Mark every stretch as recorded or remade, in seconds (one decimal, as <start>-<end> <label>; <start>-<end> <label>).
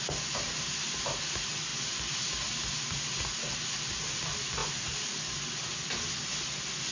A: 0.0-1.7 remade; 1.7-2.7 recorded; 2.7-4.6 remade; 4.6-6.2 recorded; 6.2-6.9 remade